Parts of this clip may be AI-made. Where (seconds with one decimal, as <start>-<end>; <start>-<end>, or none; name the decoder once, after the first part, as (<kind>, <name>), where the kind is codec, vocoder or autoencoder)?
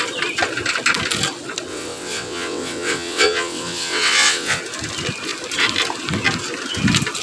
1.7-4.6 (vocoder, WaveNeXt)